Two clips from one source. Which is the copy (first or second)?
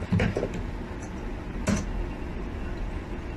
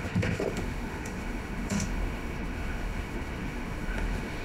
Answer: second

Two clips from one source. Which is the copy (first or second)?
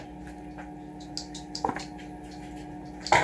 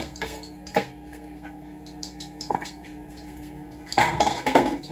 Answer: second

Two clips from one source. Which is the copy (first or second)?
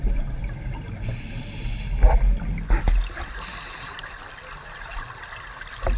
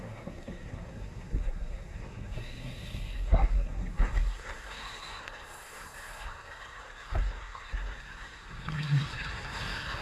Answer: second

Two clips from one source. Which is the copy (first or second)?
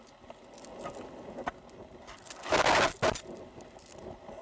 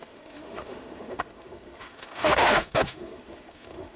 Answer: second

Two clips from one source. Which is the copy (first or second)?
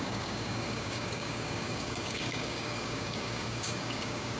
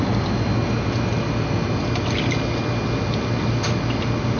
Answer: first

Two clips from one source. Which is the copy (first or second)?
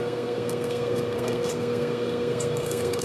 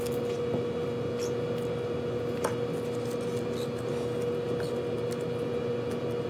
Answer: first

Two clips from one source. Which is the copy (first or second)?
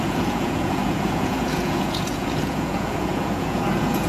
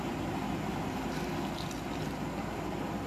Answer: first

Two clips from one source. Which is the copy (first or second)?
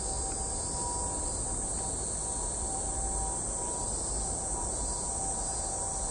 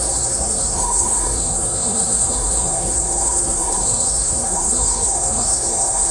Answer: second